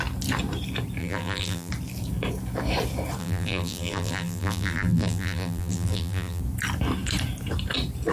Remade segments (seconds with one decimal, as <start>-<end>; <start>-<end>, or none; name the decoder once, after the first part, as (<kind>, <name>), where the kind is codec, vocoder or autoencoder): 1.0-1.7 (vocoder, BigVGAN v2); 3.2-6.4